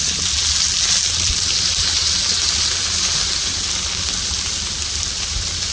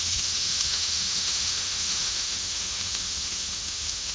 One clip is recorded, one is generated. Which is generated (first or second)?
second